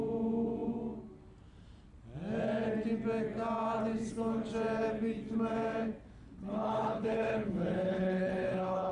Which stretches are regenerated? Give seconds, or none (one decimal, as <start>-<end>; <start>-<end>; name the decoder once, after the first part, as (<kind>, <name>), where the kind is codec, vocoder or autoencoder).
6.4-8.9 (codec, HILCodec)